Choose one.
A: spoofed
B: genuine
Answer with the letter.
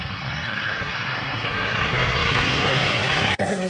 A